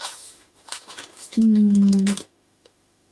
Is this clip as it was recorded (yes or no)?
no